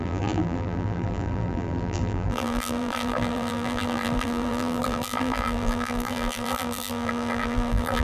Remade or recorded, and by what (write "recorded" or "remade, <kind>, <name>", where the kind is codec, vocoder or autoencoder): remade, vocoder, BigVGAN v2